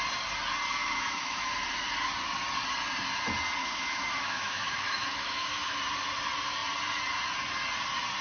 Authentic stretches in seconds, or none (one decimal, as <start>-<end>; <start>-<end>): 0.0-0.8; 1.5-3.6; 5.8-8.2